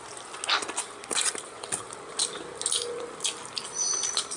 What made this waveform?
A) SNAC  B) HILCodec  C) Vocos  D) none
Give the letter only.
D